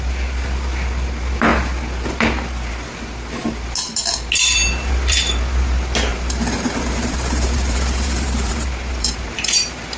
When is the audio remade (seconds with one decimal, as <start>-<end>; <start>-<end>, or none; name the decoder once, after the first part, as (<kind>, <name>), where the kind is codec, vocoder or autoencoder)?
6.1-10.0 (vocoder, BigVGAN v2)